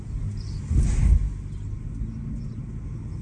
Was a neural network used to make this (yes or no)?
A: no